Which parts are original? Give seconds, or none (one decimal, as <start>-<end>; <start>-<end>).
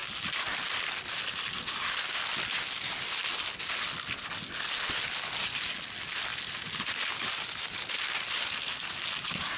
0.0-9.6